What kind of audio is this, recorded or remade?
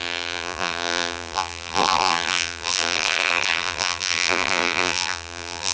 remade